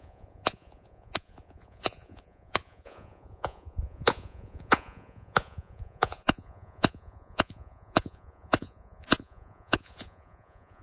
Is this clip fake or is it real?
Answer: fake